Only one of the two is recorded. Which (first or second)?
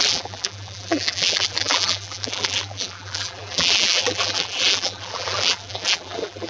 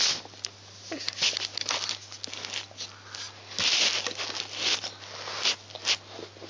second